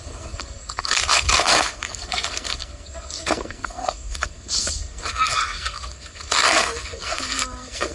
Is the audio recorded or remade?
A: remade